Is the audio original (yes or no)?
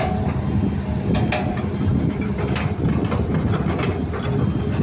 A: yes